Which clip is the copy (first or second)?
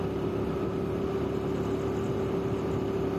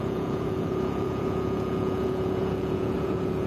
second